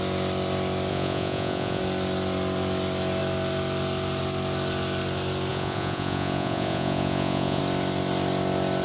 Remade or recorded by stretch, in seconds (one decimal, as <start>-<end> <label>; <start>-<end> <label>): 0.0-0.9 recorded; 0.9-1.8 remade; 1.8-5.5 recorded; 5.5-7.6 remade; 7.6-8.8 recorded